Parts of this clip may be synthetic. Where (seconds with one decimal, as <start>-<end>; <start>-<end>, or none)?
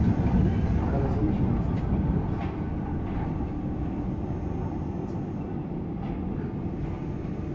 none